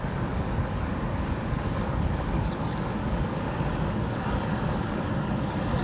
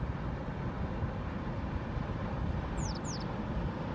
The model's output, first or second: first